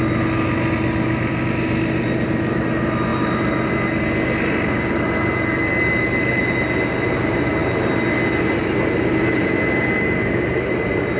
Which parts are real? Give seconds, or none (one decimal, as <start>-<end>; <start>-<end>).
0.0-11.2

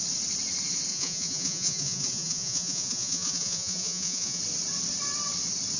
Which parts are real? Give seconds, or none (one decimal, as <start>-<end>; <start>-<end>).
0.0-0.9; 4.4-5.8

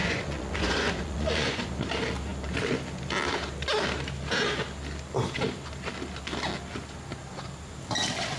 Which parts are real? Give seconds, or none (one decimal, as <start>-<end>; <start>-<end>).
1.7-8.4